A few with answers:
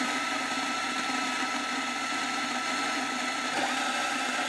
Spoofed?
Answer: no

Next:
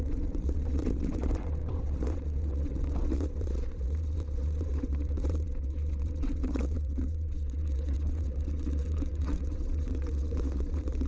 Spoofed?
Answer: yes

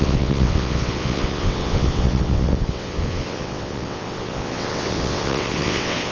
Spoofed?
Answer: yes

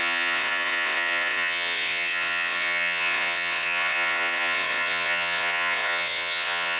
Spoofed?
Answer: yes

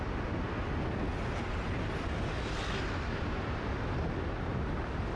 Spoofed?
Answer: no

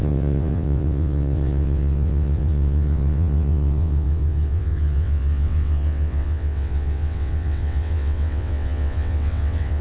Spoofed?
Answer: yes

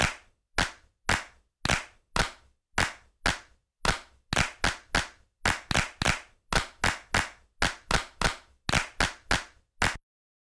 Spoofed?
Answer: no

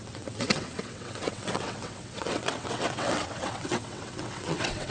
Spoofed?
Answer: yes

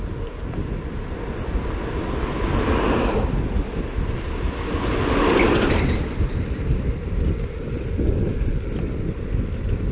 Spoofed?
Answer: no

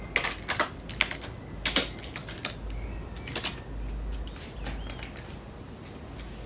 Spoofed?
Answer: no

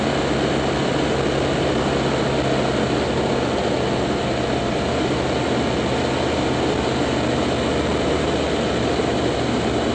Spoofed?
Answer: no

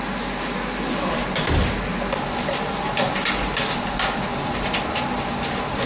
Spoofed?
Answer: no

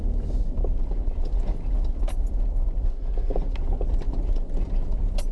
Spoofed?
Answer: no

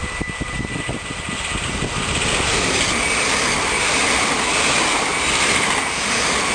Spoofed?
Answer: no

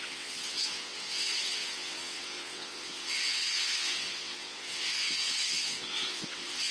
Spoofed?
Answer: yes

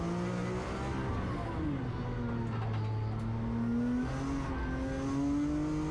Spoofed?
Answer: no